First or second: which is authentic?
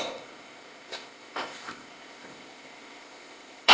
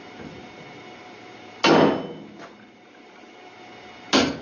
second